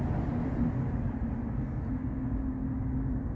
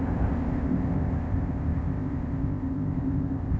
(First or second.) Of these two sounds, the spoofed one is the second